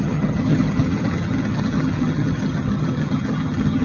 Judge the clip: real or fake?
fake